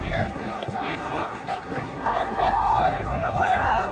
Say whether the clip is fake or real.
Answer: fake